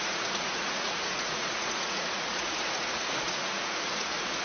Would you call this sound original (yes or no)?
no